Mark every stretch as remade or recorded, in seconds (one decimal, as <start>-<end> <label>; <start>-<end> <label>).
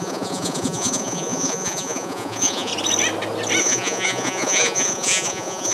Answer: 0.0-2.7 remade; 2.7-3.6 recorded; 3.6-5.7 remade